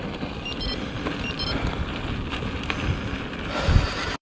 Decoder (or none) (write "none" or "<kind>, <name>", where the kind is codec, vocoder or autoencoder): vocoder, BigVGAN v2